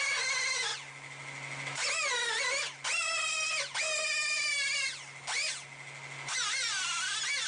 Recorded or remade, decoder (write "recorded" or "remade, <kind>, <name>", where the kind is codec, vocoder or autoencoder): recorded